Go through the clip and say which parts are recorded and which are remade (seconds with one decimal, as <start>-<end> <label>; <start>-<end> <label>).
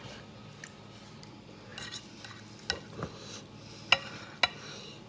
0.0-5.1 recorded